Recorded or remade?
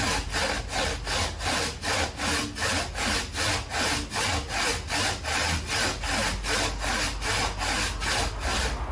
recorded